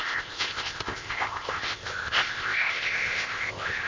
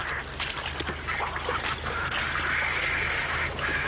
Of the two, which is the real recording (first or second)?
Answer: second